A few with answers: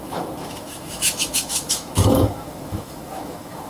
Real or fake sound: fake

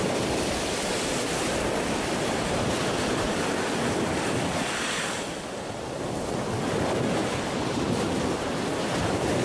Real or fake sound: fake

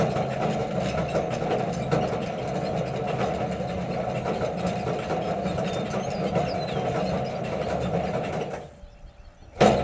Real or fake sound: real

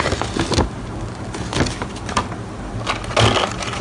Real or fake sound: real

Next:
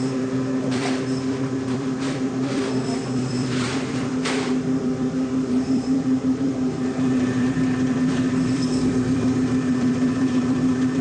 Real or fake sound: fake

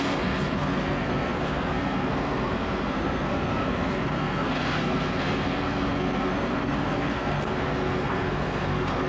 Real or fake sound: fake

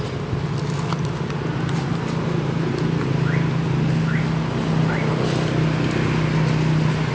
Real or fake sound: real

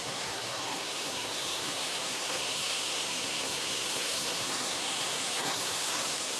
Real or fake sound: fake